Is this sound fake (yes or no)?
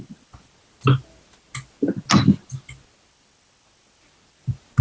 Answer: no